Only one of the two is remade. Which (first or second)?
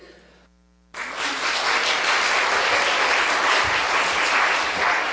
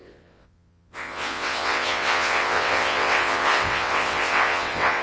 second